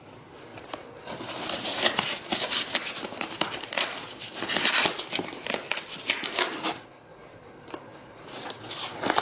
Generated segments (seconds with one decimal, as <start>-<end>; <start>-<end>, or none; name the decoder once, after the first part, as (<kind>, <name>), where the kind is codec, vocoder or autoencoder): 0.5-3.7 (vocoder, BigVGAN v2)